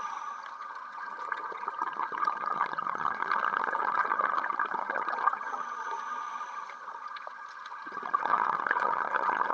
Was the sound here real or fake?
fake